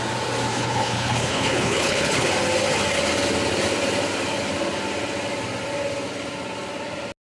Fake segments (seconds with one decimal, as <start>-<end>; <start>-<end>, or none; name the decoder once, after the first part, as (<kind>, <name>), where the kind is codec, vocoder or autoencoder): 0.5-2.3 (codec, HILCodec)